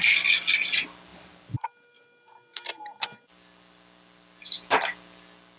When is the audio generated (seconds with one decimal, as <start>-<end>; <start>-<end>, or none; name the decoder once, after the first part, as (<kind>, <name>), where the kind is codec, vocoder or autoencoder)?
none

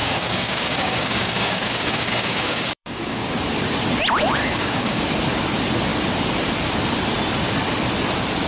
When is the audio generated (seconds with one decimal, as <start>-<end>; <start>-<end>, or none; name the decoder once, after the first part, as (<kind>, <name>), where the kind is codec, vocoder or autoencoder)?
0.0-3.3 (codec, DAC); 4.4-5.0